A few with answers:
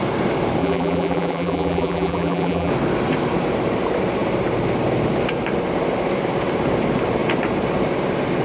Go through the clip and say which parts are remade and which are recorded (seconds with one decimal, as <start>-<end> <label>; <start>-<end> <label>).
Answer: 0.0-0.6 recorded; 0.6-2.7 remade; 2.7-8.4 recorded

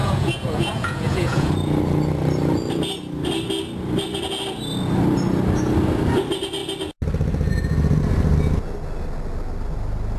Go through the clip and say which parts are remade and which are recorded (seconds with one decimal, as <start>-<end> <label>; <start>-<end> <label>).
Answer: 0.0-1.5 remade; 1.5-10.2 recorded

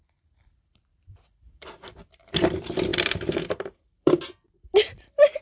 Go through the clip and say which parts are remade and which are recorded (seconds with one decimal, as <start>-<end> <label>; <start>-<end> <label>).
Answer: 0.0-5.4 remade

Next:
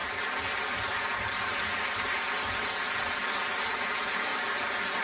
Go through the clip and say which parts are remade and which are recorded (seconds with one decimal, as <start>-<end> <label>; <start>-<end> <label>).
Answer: 0.0-5.0 recorded

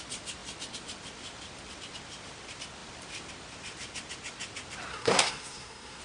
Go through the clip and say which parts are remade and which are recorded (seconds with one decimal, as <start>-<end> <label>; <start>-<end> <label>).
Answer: 0.0-4.9 recorded; 4.9-6.0 remade